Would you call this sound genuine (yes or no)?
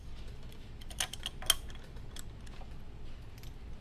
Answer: yes